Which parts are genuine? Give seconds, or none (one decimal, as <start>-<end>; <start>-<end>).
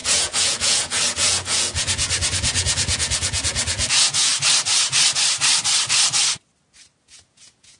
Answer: 4.3-7.0